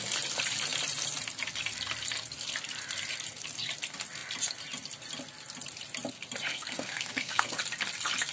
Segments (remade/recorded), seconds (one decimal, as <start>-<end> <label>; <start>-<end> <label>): 0.0-6.5 recorded; 6.5-7.6 remade; 7.6-8.3 recorded